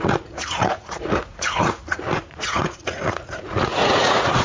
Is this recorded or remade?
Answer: remade